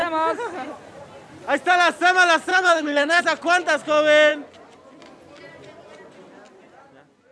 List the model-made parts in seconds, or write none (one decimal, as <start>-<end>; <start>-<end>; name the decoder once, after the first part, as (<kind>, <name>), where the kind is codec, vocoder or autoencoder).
2.5-3.2 (codec, HILCodec)